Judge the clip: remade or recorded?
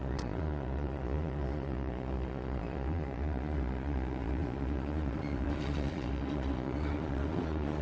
remade